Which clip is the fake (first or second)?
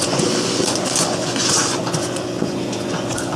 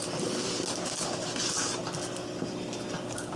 first